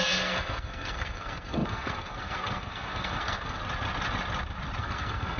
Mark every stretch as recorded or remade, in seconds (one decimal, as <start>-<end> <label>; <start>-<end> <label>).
0.0-3.6 remade; 3.6-4.8 recorded; 4.8-5.4 remade